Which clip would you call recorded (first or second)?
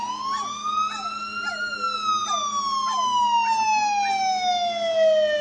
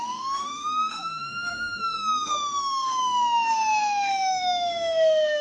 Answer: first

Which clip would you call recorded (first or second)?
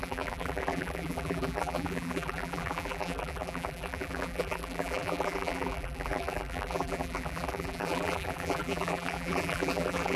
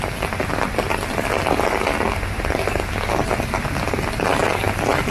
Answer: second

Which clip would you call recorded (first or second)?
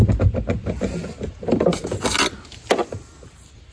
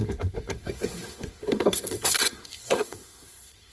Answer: first